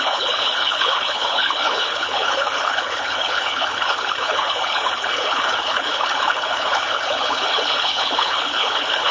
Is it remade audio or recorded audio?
remade